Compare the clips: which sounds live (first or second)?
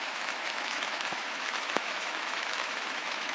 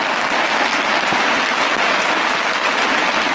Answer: second